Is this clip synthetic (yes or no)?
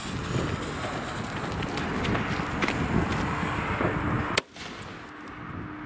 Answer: no